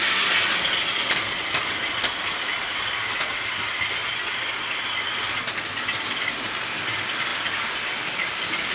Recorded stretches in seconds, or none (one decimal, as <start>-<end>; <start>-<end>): 0.0-8.7